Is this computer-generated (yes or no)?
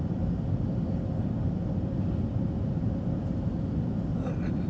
no